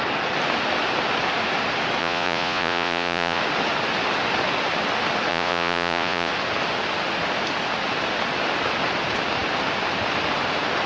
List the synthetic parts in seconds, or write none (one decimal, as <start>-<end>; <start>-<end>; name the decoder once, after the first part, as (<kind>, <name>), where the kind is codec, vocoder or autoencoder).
2.0-3.4 (vocoder, Vocos); 5.3-6.3